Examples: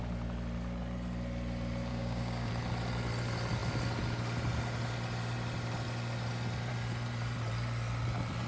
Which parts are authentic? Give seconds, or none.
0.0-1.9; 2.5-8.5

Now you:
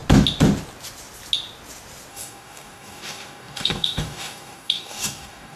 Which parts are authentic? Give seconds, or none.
0.0-2.1

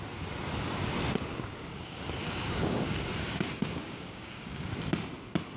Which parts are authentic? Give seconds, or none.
0.0-1.3; 4.7-5.6

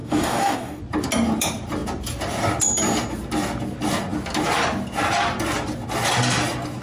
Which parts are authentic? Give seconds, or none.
0.8-6.8

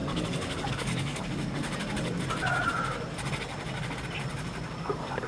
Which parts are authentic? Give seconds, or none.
1.6-4.8

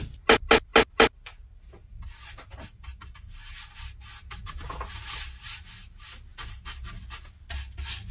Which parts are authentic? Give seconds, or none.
0.0-8.1